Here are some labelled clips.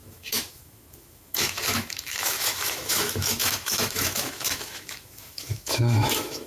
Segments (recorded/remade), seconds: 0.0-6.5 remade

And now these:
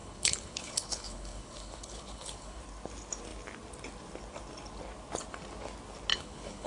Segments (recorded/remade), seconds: 0.0-2.6 remade; 2.6-6.1 recorded; 6.1-6.7 remade